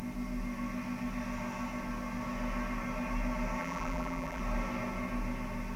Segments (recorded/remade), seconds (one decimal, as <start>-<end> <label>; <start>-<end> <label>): 0.0-3.6 recorded; 3.6-4.4 remade; 4.4-5.8 recorded